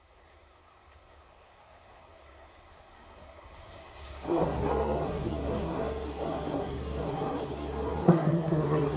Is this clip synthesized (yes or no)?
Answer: yes